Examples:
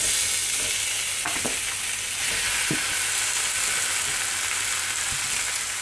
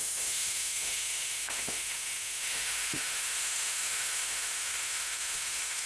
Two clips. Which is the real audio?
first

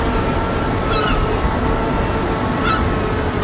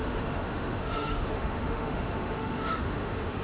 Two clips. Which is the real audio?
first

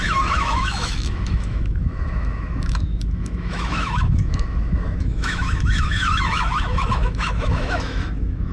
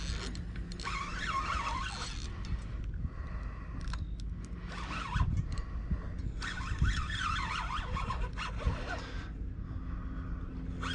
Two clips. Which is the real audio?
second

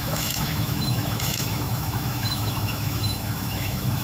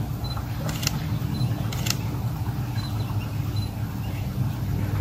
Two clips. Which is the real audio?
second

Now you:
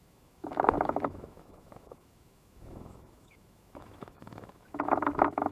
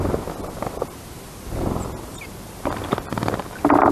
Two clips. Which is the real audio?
second